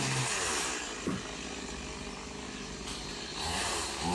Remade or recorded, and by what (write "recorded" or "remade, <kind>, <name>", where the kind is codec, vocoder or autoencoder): recorded